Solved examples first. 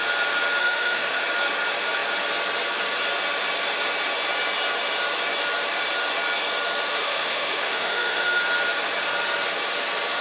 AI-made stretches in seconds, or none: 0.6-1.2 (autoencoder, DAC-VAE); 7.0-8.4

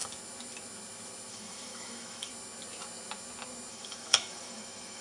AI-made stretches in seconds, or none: 1.3-2.3 (autoencoder, DAC-VAE); 3.7-5.0

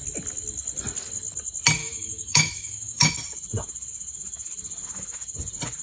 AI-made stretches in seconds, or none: 1.8-3.1 (autoencoder, DAC-VAE)

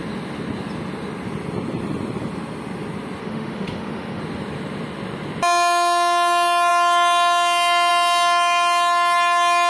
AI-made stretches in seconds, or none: 3.2-4.2 (autoencoder, DAC-VAE)

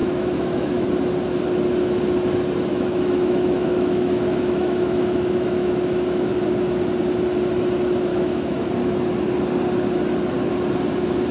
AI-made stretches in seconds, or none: 0.0-0.9 (autoencoder, DAC-VAE); 2.7-6.3; 8.1-8.7

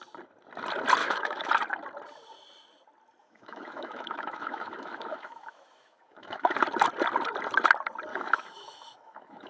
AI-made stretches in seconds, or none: 1.0-1.5 (autoencoder, DAC-VAE); 3.2-6.6; 8.1-9.5

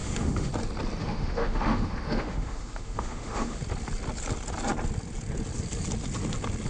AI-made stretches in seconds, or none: 0.0-0.5 (autoencoder, DAC-VAE); 1.0-3.6